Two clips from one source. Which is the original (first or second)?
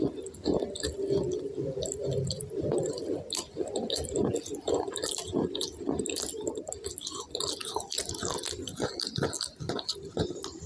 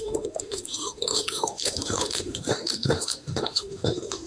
first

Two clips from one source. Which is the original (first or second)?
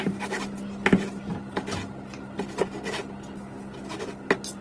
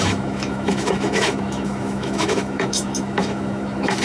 first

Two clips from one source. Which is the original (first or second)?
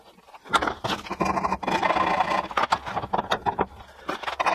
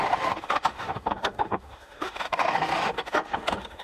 first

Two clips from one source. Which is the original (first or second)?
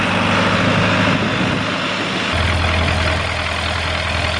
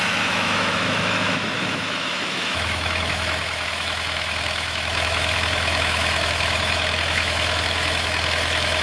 first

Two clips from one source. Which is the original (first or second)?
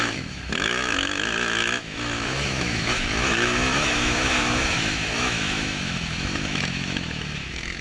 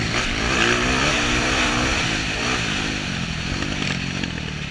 second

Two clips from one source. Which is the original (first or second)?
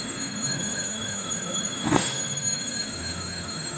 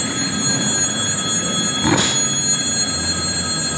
second